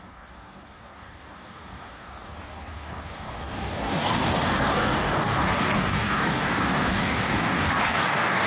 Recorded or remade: remade